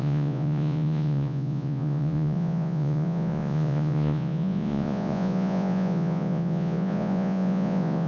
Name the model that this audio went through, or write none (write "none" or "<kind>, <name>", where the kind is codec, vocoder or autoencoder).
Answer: vocoder, Vocos